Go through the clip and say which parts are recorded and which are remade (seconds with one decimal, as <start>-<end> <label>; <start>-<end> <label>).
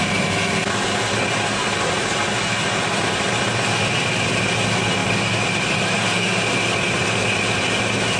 0.0-8.2 recorded